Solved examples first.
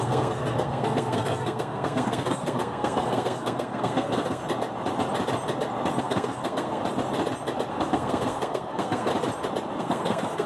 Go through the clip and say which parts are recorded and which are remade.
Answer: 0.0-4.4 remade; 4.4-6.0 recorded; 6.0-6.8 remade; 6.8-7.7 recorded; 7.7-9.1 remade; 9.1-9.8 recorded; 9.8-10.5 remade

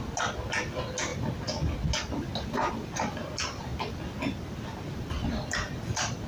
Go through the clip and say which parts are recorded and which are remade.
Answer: 0.0-6.3 recorded

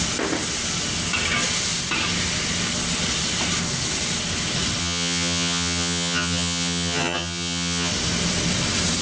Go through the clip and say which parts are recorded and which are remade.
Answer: 0.0-4.8 recorded; 4.8-7.9 remade; 7.9-9.0 recorded

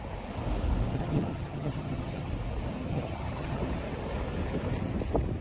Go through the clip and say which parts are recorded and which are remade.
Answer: 0.0-0.9 recorded; 0.9-2.3 remade; 2.3-2.9 recorded; 2.9-3.6 remade; 3.6-5.4 recorded

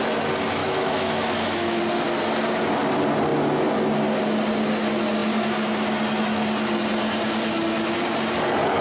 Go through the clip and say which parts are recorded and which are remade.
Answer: 0.0-0.6 recorded; 0.6-1.8 remade; 1.8-8.8 recorded